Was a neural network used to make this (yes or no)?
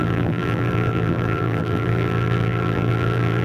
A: yes